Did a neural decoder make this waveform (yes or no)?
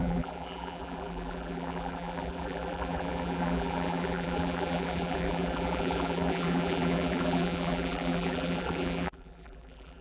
yes